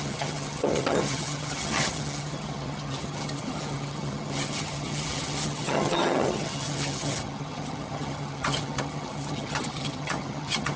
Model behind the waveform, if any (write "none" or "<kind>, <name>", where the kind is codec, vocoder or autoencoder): vocoder, HiFi-GAN